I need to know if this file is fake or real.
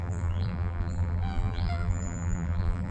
fake